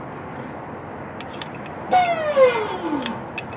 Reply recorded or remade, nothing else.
recorded